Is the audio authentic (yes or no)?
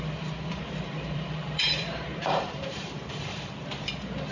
no